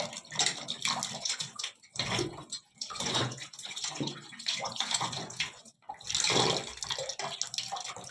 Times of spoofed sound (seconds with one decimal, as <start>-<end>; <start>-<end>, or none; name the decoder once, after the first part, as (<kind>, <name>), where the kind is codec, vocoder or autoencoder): 1.2-5.8 (vocoder, Vocos)